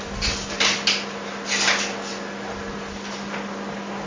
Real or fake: real